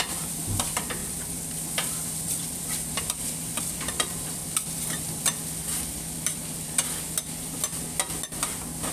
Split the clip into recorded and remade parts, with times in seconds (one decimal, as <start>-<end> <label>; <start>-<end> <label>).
0.0-4.4 remade; 4.4-8.9 recorded